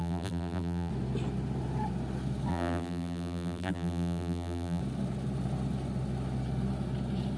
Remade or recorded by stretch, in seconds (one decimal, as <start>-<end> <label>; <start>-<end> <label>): 0.0-0.9 remade; 0.9-2.5 recorded; 2.5-4.8 remade; 4.8-7.4 recorded